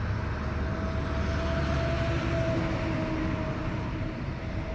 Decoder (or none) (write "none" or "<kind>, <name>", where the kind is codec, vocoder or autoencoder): none